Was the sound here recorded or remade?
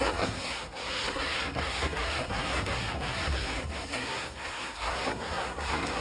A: remade